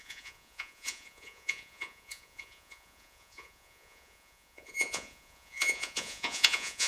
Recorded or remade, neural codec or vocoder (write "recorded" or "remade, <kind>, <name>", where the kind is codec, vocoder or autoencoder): remade, vocoder, Vocos